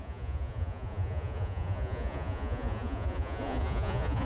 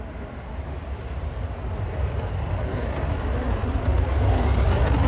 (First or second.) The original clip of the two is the second